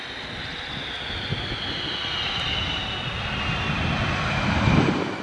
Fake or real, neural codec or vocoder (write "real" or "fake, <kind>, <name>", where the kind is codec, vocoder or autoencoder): real